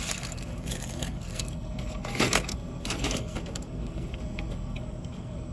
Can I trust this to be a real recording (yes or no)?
no